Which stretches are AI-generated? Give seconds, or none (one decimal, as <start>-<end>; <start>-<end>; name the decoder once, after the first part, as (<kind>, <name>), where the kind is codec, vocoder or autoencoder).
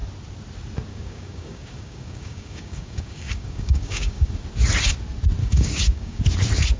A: 0.9-4.3 (codec, DAC); 5.4-6.2